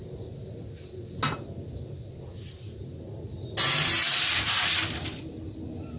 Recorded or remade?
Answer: recorded